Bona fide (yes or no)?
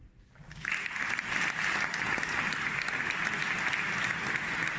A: yes